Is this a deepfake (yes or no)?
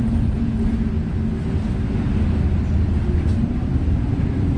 no